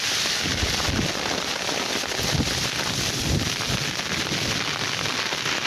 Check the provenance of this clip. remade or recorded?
recorded